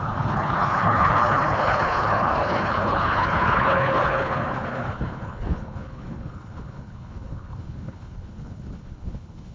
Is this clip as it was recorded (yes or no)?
no